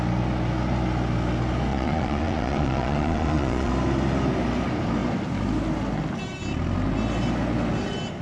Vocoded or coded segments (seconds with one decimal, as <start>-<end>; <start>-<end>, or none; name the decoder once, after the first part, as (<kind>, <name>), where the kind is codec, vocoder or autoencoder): 1.7-3.7 (vocoder, Vocos)